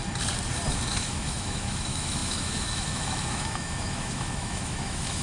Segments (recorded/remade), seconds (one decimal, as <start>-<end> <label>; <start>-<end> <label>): 0.0-0.9 recorded; 0.9-5.2 remade